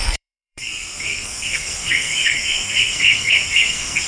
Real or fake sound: fake